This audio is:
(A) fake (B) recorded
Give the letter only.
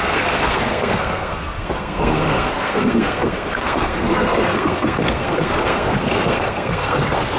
A